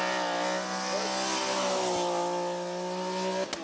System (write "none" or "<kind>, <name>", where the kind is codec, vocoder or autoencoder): none